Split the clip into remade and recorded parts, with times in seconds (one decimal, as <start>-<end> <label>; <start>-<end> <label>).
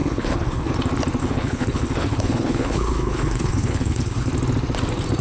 0.0-0.7 remade; 0.7-1.2 recorded; 1.2-4.3 remade; 4.3-5.2 recorded